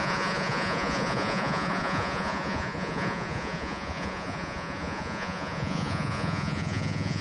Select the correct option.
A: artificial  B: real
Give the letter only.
A